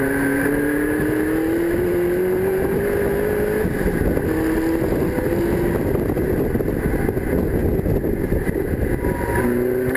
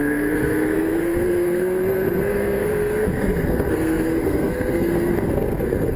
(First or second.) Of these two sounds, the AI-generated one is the second